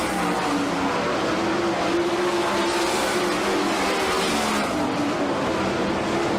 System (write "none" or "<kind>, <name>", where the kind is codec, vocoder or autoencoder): none